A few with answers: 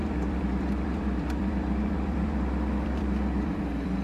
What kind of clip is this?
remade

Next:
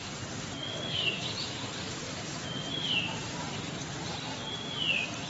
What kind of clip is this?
recorded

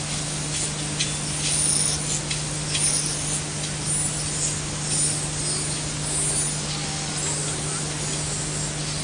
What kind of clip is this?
recorded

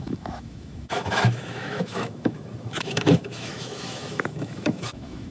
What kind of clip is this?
remade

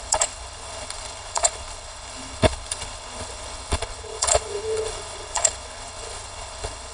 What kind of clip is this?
remade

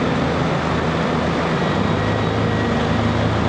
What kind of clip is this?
recorded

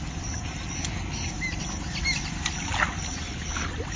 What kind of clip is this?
recorded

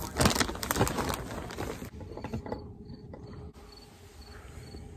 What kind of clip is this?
recorded